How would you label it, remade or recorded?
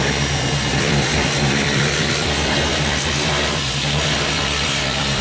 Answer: remade